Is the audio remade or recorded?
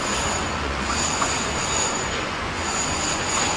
remade